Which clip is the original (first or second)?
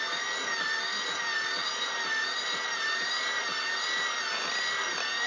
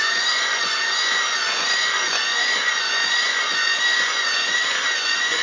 first